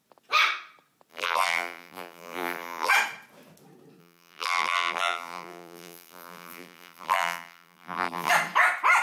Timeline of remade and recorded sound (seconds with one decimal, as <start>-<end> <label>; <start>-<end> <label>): 0.0-1.1 recorded; 1.1-2.9 remade; 2.9-4.0 recorded; 4.0-8.3 remade; 8.3-9.0 recorded